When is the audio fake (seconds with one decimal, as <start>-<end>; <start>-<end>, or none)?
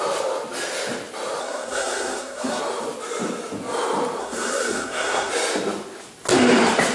1.4-2.6; 4.2-5.3